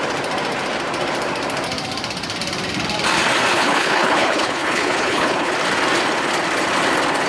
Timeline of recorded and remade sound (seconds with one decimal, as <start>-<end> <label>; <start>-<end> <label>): 0.0-3.5 recorded; 3.5-5.5 remade; 5.5-7.3 recorded